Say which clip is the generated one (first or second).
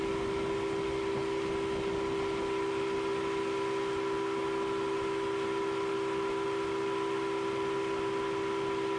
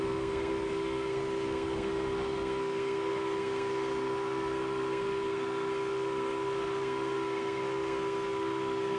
second